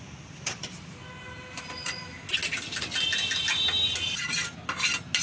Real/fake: real